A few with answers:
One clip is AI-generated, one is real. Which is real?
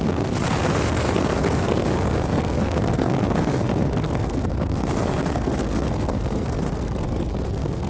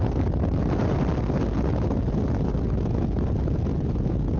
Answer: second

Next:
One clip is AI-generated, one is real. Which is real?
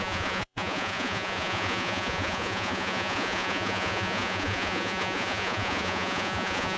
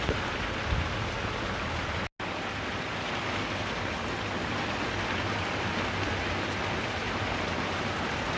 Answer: second